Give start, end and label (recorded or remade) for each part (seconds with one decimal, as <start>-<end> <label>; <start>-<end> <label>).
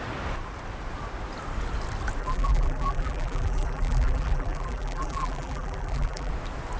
0.0-2.2 recorded; 2.2-6.3 remade; 6.3-6.8 recorded